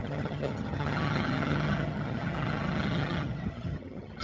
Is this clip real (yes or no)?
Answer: no